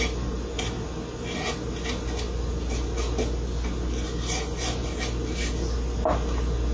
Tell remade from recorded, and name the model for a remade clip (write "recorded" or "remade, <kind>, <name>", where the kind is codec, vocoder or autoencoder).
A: recorded